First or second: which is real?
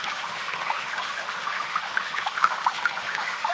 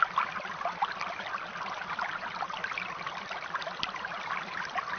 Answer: second